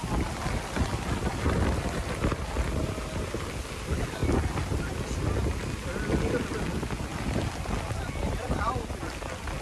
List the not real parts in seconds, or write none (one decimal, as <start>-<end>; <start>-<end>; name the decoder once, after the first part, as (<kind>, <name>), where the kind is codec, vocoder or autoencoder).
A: none